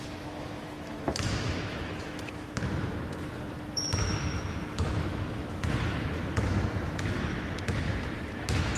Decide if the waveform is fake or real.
fake